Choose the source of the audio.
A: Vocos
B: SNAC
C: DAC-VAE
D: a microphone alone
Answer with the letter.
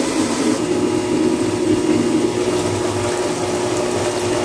D